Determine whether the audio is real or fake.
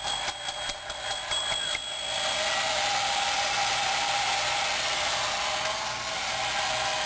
real